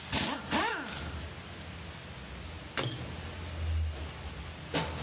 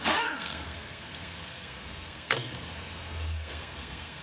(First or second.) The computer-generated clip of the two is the second